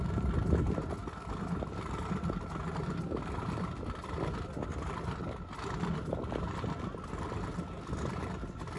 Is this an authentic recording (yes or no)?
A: yes